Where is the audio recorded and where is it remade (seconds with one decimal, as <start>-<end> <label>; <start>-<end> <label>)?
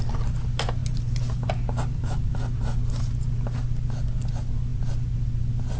0.0-5.8 recorded